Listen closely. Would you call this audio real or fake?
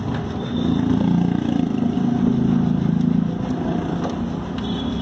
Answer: real